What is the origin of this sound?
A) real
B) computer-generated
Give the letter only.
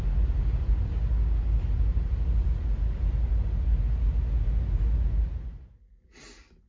A